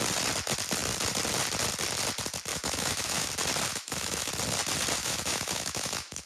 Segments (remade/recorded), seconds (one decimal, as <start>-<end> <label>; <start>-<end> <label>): 0.0-2.5 recorded; 2.5-3.3 remade; 3.3-3.7 recorded; 3.7-4.3 remade; 4.3-5.0 recorded; 5.0-6.3 remade